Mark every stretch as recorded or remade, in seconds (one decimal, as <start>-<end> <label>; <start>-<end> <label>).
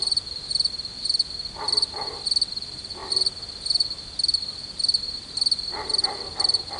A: 0.0-6.8 recorded